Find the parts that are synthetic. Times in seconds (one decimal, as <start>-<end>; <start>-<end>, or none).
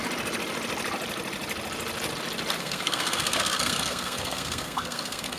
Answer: 2.6-5.4